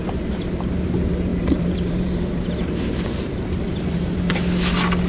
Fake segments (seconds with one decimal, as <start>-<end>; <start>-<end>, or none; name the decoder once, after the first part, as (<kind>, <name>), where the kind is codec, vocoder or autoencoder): 1.3-4.4 (vocoder, BigVGAN v2)